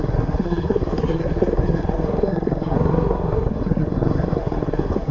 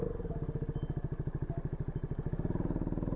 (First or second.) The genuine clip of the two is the second